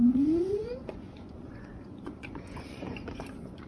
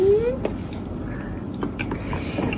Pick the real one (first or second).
second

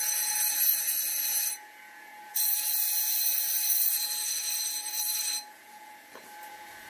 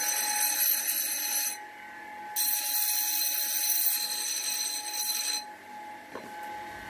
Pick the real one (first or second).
second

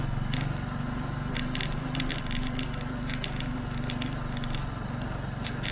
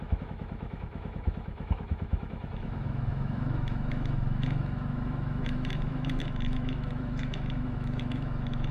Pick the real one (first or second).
first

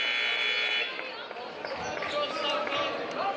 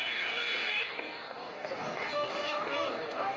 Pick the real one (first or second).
first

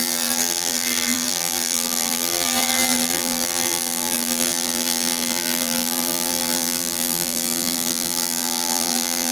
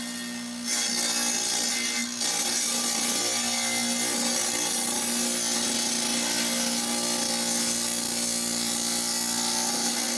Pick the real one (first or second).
second